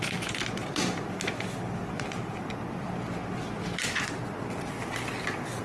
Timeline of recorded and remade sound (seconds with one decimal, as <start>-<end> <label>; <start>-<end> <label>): 0.0-5.6 recorded